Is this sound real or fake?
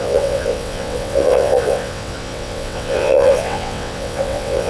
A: fake